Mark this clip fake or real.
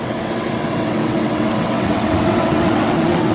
fake